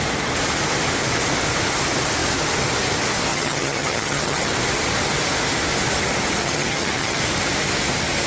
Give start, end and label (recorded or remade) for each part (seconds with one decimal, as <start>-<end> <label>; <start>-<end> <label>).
0.0-3.3 recorded; 3.3-4.5 remade; 4.5-6.4 recorded; 6.4-7.2 remade; 7.2-8.3 recorded